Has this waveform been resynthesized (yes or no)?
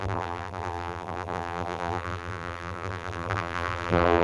yes